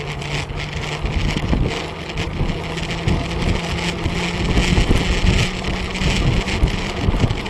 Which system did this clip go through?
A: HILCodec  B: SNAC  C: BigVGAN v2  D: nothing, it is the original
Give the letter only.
D